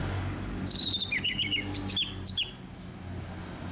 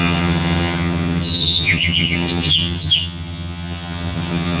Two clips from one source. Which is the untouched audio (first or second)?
first